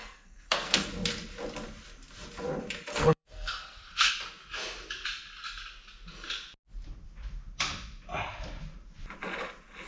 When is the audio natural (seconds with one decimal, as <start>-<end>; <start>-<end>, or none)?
0.9-2.9; 4.1-9.9